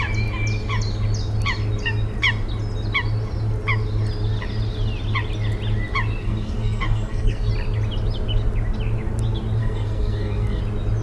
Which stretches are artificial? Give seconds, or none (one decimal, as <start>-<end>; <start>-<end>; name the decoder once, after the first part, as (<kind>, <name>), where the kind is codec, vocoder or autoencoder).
6.2-7.5 (codec, SNAC); 9.6-10.6